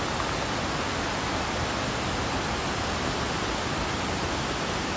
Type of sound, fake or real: real